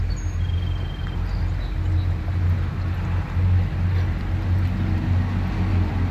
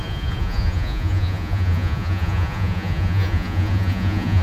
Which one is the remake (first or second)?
second